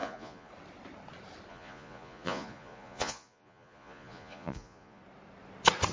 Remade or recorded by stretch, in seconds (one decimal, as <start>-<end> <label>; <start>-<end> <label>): 0.0-0.5 remade; 0.5-1.5 recorded; 1.5-5.0 remade; 5.0-5.9 recorded